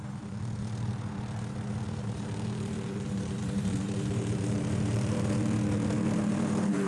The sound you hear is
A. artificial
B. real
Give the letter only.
A